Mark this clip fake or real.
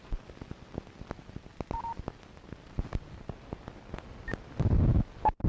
real